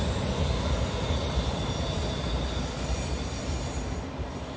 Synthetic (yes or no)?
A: no